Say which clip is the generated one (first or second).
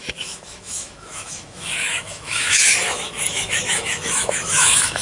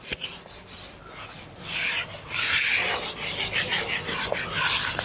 first